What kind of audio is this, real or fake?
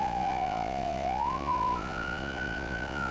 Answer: fake